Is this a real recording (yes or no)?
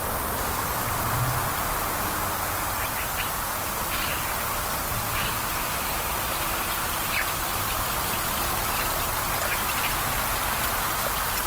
yes